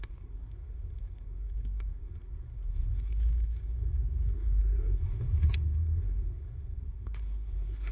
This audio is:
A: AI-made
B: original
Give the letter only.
A